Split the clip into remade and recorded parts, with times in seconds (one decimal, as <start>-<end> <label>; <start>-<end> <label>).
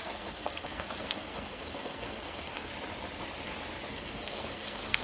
0.0-2.7 remade; 2.7-3.9 recorded; 3.9-5.0 remade